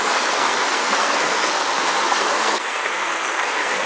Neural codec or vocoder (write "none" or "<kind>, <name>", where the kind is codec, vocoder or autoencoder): codec, SNAC